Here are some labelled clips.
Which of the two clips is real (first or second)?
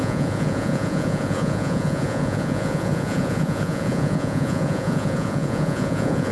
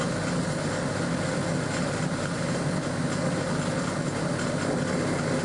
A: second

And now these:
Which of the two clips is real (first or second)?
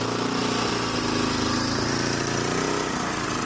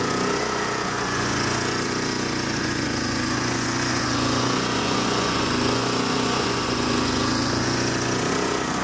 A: first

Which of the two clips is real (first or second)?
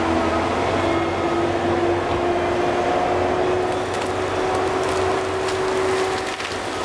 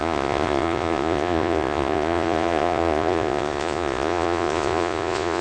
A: first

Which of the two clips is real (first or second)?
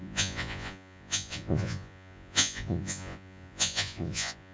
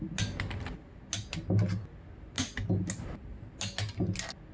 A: second